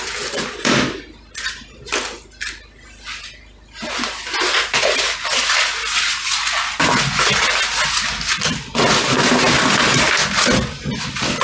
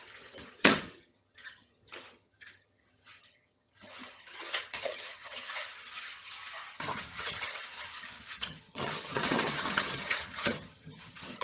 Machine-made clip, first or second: second